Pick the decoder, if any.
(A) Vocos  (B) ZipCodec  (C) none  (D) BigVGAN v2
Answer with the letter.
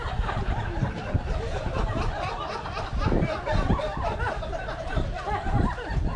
C